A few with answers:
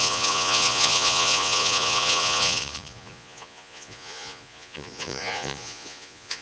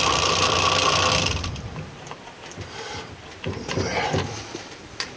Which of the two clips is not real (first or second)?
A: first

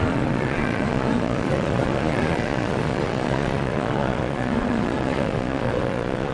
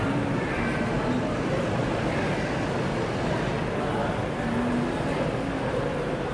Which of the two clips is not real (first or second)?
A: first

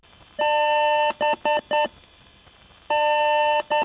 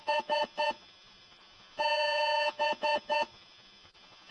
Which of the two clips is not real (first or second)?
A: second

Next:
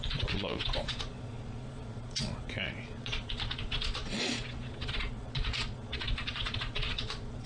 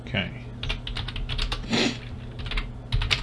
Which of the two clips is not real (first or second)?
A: first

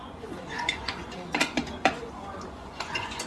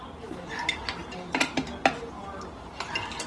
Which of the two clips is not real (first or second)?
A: first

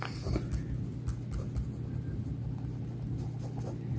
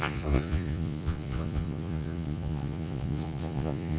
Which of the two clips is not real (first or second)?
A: second